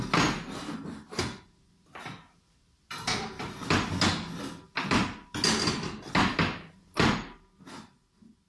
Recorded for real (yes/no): yes